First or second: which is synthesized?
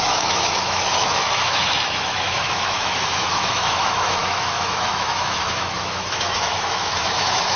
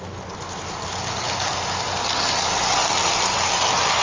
first